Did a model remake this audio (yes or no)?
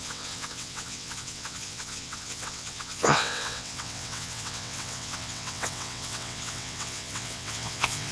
yes